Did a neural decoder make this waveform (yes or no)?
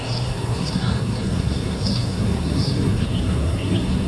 yes